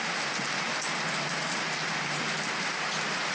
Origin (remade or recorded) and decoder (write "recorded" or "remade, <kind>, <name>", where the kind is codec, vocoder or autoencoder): recorded